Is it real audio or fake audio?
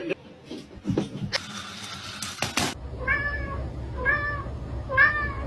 real